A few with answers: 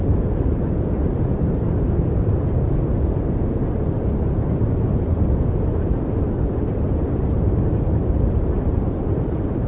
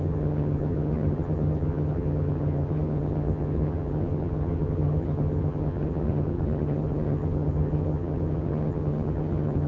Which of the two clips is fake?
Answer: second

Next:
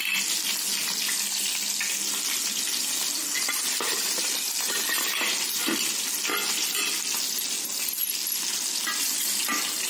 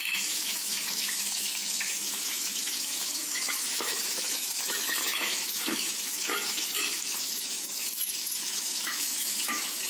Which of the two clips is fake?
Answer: second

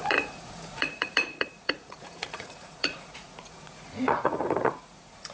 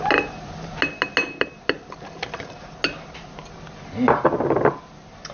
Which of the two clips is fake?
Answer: first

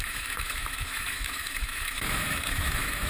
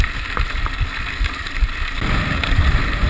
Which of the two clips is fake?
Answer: first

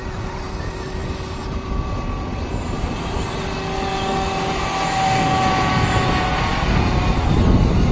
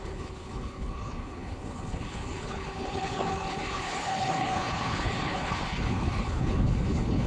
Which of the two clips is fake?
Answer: second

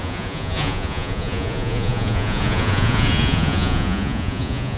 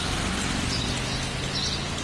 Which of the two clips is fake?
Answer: first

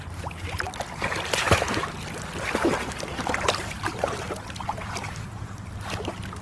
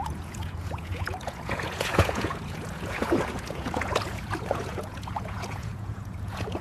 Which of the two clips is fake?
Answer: second